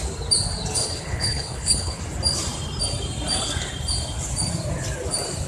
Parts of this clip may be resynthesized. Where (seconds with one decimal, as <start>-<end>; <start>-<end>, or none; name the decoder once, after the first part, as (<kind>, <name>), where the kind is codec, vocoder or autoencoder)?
0.8-2.0 (codec, HILCodec)